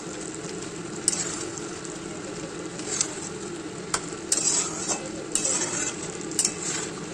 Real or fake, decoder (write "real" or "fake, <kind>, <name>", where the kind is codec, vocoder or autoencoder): real